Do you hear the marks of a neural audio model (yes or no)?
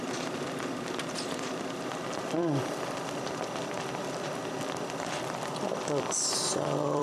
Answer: yes